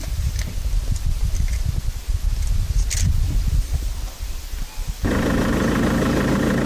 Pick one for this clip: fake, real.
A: real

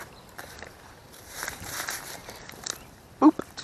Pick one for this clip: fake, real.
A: fake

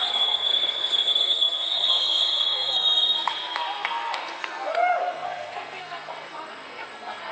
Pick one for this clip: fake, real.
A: fake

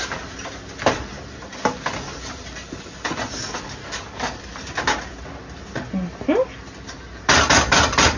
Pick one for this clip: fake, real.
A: real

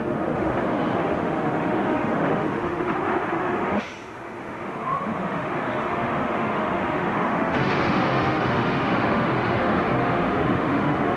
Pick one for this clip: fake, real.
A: fake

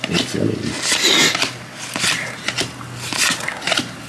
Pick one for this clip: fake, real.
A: real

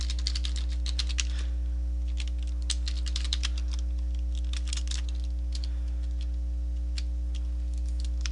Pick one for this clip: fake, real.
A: fake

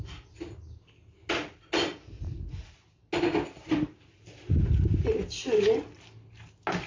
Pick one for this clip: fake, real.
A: real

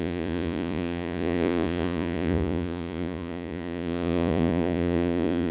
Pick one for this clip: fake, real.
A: fake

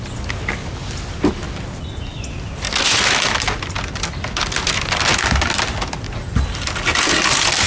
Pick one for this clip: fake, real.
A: real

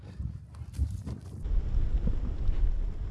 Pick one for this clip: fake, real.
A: real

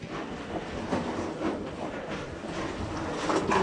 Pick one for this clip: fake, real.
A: real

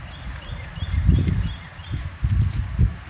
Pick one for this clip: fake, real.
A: real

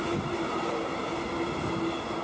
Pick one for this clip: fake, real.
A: real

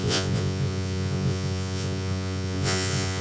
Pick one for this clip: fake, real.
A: fake